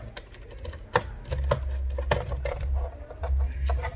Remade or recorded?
recorded